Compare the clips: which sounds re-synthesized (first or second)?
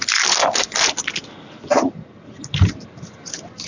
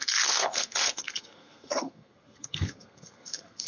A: second